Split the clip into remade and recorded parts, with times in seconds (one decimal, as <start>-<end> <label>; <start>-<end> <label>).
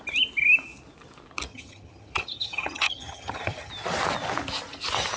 0.0-1.5 recorded; 1.5-3.7 remade; 3.7-5.2 recorded